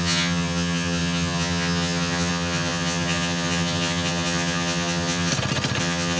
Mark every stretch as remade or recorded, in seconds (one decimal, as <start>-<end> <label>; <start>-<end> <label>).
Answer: 0.0-5.3 remade; 5.3-5.8 recorded; 5.8-6.2 remade